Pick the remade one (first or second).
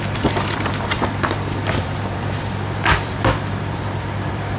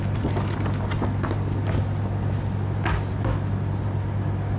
first